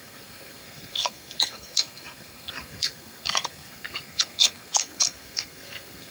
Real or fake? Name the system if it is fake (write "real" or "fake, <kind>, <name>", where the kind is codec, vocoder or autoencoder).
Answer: fake, codec, SNAC